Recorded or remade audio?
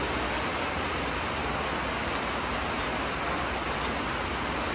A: recorded